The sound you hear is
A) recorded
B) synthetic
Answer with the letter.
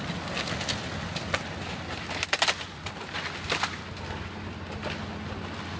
A